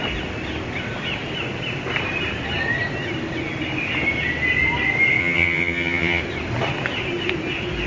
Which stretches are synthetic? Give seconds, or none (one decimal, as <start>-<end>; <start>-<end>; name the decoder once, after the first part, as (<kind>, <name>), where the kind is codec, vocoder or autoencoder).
5.2-6.2 (vocoder, HiFi-GAN)